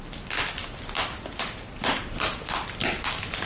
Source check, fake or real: real